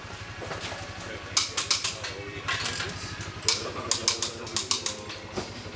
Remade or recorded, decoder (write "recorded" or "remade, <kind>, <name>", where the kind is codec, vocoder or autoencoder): recorded